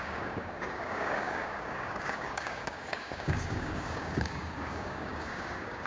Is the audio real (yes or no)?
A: no